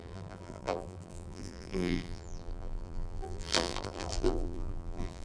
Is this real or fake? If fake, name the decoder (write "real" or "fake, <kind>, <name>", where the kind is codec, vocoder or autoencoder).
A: fake, vocoder, BigVGAN v2